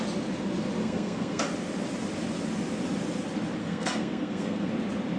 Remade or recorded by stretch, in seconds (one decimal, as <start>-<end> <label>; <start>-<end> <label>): 0.0-0.8 recorded; 0.8-1.4 remade; 1.4-3.6 recorded; 3.6-4.7 remade; 4.7-5.2 recorded